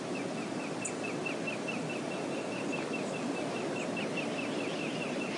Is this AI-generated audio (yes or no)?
no